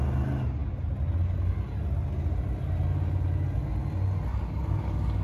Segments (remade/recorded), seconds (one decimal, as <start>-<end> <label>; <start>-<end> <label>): 0.0-4.3 recorded; 4.3-5.2 remade

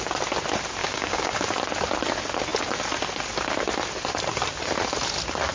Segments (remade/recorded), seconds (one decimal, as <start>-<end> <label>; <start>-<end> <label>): 0.0-0.8 recorded; 0.8-1.4 remade; 1.4-5.5 recorded